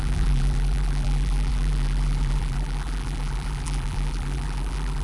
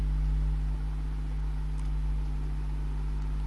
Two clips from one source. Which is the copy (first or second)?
first